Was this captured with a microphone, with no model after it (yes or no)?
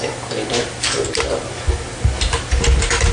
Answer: yes